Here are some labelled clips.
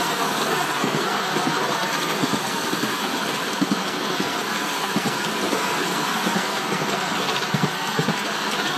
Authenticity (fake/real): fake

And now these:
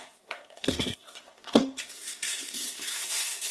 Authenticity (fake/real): fake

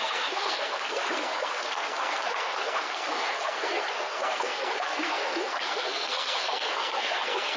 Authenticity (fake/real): fake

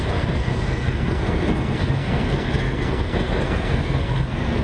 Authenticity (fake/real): fake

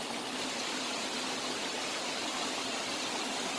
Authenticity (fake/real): real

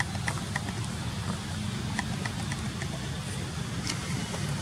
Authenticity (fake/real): real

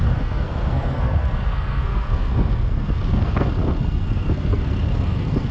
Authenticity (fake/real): fake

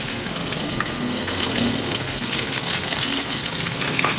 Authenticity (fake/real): fake